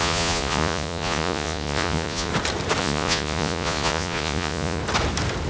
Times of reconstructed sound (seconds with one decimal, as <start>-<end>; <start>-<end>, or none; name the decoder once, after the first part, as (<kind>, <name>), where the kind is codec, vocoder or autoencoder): 0.0-2.3 (vocoder, Vocos); 2.8-4.8